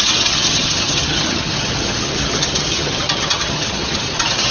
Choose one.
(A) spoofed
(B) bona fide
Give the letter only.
A